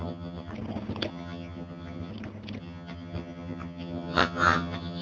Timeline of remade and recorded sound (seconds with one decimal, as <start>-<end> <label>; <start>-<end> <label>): 0.0-0.5 remade; 0.5-1.1 recorded; 1.1-2.1 remade; 2.1-2.6 recorded; 2.6-5.0 remade